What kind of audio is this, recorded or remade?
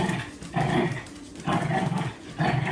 recorded